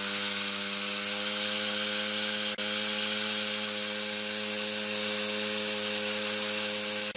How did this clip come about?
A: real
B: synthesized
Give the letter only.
A